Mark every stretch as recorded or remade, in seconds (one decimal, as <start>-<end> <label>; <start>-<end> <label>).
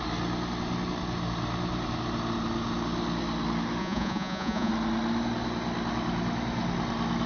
0.0-3.8 recorded; 3.8-4.7 remade; 4.7-7.3 recorded